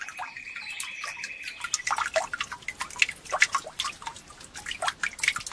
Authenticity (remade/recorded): recorded